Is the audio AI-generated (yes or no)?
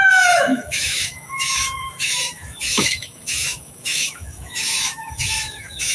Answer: yes